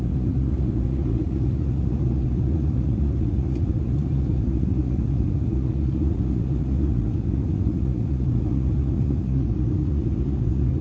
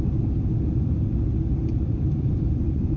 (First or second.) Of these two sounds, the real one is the second